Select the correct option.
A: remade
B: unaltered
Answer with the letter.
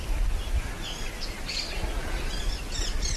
B